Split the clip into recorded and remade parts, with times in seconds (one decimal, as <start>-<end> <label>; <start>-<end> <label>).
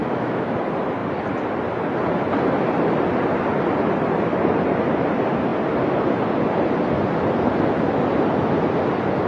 0.0-0.5 remade; 0.5-9.3 recorded